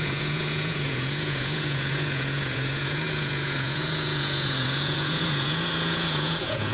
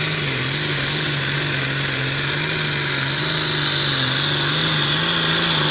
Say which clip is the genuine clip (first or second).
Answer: second